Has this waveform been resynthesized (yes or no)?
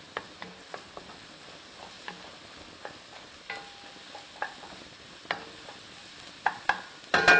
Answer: no